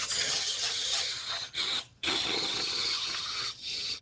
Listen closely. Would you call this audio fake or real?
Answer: fake